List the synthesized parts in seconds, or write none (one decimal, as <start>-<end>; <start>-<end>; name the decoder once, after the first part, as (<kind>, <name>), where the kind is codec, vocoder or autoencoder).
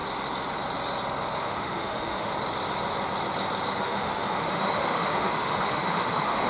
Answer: 1.4-2.3 (autoencoder, DAC-VAE); 3.8-6.5